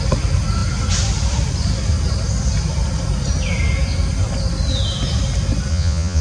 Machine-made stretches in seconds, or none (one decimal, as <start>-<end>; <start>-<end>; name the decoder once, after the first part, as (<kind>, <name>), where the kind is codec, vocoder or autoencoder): 5.7-6.2 (vocoder, Vocos)